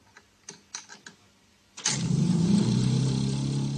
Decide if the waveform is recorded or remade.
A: recorded